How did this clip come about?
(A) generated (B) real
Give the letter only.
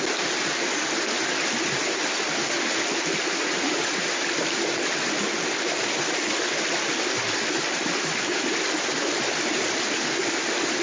B